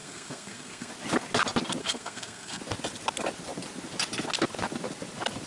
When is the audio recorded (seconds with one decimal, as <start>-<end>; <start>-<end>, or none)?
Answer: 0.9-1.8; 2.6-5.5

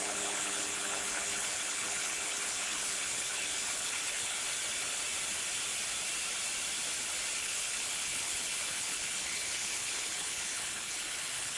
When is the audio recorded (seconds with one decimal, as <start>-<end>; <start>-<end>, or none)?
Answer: 4.4-7.4

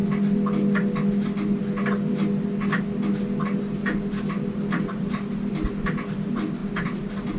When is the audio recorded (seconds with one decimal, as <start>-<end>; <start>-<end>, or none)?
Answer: 0.0-7.4

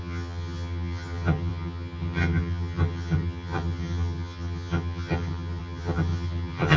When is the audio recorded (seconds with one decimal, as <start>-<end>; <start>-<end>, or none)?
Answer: none

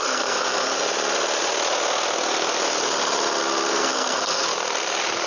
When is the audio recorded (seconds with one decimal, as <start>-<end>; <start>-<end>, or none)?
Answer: 0.5-3.7; 4.5-5.3

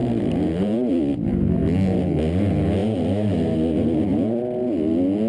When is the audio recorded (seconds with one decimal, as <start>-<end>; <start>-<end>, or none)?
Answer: 0.9-2.8; 4.4-5.3